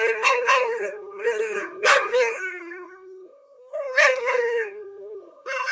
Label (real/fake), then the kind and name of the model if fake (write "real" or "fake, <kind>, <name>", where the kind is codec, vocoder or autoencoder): fake, codec, SNAC